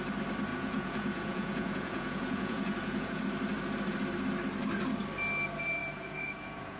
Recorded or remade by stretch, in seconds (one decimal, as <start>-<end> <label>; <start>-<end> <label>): 0.0-0.5 recorded; 0.5-3.2 remade; 3.2-5.8 recorded; 5.8-6.8 remade